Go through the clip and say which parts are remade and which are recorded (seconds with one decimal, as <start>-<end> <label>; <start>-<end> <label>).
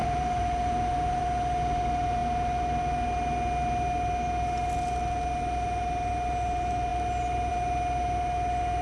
0.0-1.2 remade; 1.2-8.8 recorded